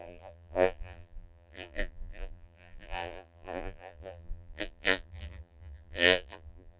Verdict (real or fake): fake